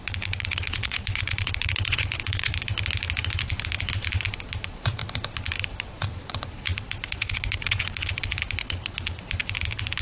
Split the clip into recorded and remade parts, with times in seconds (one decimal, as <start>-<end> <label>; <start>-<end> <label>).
0.0-2.5 remade; 2.5-4.6 recorded; 4.6-5.0 remade; 5.0-5.6 recorded; 5.6-9.4 remade; 9.4-10.0 recorded